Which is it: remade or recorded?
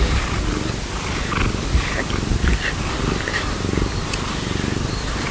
recorded